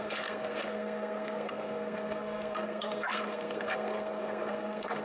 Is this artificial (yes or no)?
yes